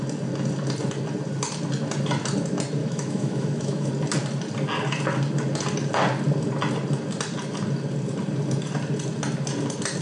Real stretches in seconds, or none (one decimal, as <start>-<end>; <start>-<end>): 0.0-2.8; 3.9-10.0